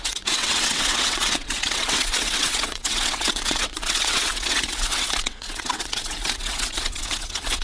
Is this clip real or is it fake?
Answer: fake